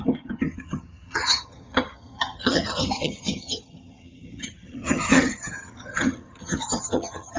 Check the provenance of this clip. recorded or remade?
remade